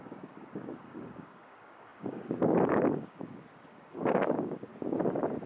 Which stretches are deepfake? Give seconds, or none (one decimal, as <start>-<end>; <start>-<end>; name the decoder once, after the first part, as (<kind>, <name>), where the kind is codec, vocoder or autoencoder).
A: 0.0-4.7 (codec, DAC)